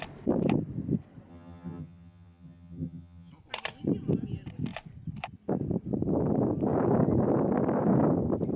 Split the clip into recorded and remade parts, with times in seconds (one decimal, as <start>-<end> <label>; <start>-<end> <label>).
0.0-1.3 recorded; 1.3-3.3 remade; 3.3-8.6 recorded